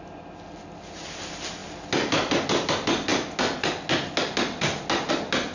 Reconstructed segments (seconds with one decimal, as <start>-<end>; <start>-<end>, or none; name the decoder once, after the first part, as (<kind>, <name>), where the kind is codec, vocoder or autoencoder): none